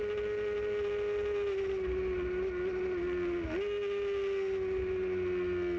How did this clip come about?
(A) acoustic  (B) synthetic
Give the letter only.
A